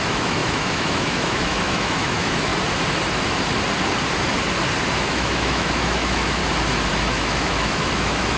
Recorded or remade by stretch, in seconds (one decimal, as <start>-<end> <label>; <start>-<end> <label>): 0.0-2.5 remade; 2.5-4.9 recorded; 4.9-6.4 remade; 6.4-6.9 recorded; 6.9-8.4 remade